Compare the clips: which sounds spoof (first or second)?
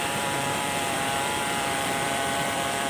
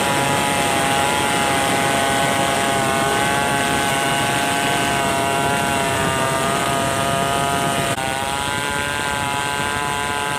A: first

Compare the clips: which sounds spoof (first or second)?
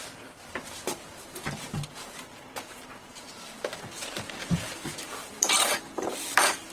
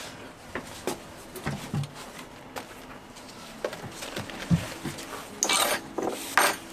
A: first